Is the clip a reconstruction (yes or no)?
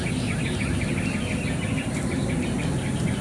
no